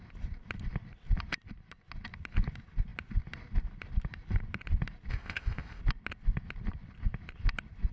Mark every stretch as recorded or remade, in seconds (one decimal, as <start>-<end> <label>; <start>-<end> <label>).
0.0-5.1 recorded; 5.1-5.8 remade; 5.8-7.9 recorded